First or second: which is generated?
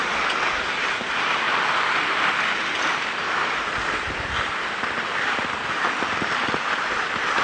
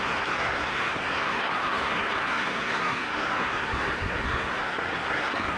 second